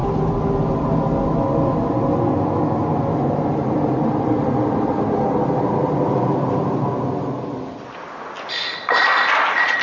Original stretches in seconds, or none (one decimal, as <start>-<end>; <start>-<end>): 0.0-2.9; 5.1-9.8